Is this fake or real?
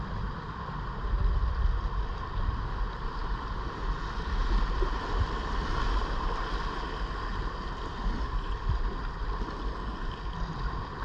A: real